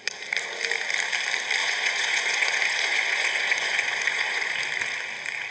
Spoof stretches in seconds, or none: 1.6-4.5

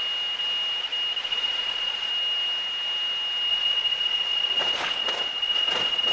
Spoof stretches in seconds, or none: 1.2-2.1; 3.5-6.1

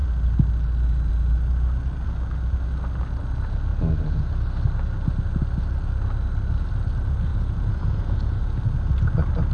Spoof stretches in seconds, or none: 3.7-4.3; 7.3-8.6